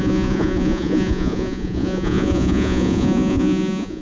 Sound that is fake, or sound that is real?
fake